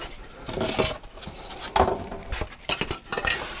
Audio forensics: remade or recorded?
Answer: recorded